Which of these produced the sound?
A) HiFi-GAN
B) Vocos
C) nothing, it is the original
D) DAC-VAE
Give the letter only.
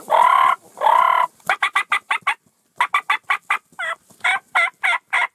C